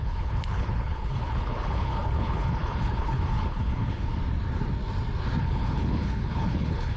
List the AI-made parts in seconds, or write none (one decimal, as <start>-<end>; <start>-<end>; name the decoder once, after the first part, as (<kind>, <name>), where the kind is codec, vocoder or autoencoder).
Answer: 0.0-4.1 (codec, HILCodec); 5.4-7.0